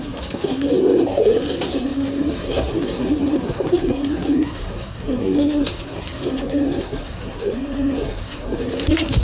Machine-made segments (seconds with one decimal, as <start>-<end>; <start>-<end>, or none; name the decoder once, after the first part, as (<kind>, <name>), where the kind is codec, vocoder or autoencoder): 0.0-9.2 (codec, SNAC)